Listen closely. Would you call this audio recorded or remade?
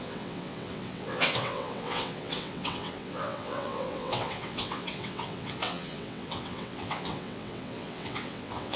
remade